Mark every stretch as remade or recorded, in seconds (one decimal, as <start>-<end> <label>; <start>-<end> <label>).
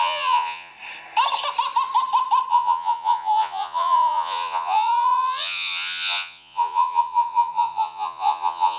0.0-0.7 remade; 0.7-2.5 recorded; 2.5-8.8 remade